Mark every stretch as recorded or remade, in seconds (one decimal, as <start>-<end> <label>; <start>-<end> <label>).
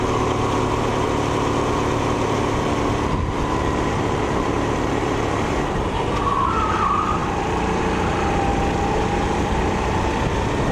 0.0-7.2 recorded; 7.2-7.8 remade; 7.8-10.7 recorded